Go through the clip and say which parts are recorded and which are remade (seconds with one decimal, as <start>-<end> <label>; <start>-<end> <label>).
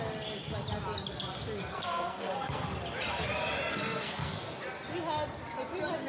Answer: 0.0-1.7 recorded; 1.7-2.6 remade; 2.6-3.7 recorded; 3.7-4.6 remade; 4.6-6.1 recorded